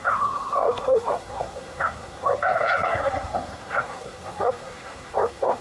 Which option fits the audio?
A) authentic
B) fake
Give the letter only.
B